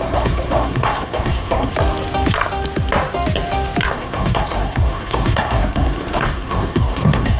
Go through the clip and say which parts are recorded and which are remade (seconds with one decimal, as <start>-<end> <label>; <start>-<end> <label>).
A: 0.0-1.7 remade; 1.7-3.9 recorded; 3.9-7.4 remade